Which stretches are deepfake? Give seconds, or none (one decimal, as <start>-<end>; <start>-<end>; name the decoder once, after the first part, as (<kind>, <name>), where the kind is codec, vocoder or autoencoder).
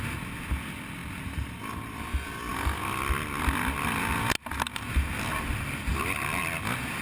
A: none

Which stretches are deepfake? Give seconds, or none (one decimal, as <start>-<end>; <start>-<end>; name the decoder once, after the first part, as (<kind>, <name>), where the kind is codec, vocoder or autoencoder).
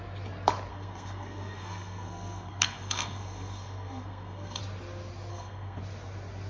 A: 0.7-4.6 (codec, SNAC); 5.3-5.8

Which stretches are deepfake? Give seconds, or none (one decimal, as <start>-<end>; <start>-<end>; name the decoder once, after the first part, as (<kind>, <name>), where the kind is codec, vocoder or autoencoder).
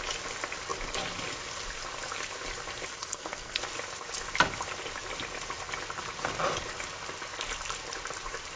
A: 2.9-3.6 (codec, SNAC)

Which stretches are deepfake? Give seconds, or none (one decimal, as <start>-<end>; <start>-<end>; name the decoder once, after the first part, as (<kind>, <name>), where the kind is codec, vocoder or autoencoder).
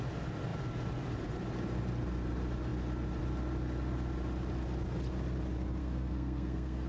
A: 5.8-6.9 (codec, SNAC)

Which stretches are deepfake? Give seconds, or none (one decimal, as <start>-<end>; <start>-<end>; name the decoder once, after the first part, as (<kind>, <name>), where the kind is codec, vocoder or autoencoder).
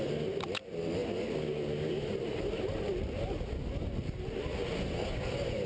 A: none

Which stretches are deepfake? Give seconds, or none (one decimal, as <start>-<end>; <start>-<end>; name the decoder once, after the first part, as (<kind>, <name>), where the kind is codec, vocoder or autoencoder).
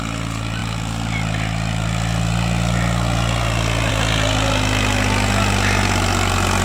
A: none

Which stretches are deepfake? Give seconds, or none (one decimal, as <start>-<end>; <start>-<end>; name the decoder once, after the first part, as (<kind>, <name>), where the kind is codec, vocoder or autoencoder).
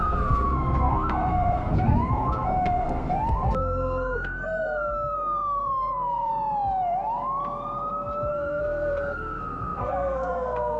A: 0.0-6.3 (codec, SNAC); 8.3-10.8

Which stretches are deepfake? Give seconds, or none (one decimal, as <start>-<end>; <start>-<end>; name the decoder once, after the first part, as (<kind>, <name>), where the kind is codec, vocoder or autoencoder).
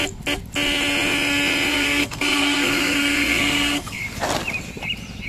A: 1.7-4.0 (codec, SNAC)